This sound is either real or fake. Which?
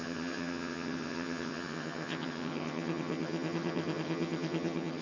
fake